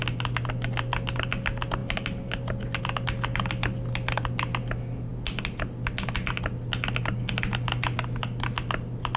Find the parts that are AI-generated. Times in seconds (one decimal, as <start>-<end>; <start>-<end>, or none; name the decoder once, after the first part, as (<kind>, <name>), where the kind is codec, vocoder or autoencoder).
none